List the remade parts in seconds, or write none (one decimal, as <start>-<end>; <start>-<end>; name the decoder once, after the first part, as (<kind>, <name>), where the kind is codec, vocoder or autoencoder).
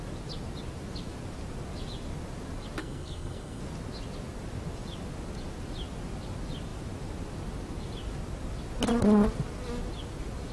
2.8-3.6 (codec, SNAC)